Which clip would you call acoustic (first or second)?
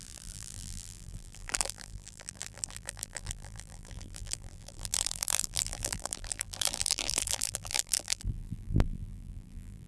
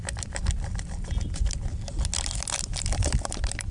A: second